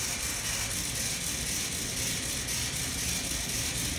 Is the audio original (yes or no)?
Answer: yes